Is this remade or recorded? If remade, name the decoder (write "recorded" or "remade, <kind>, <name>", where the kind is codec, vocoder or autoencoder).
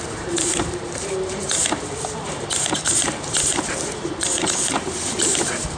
remade, vocoder, BigVGAN v2